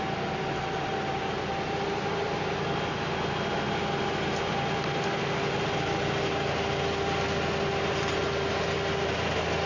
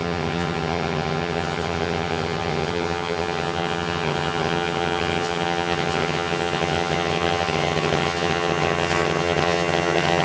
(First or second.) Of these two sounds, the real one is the first